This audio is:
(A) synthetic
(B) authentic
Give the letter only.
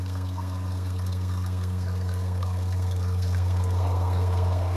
A